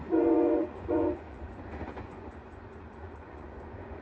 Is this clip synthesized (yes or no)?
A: yes